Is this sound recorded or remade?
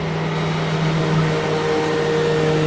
recorded